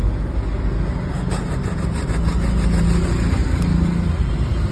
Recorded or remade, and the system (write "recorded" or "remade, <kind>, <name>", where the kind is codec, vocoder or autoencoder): recorded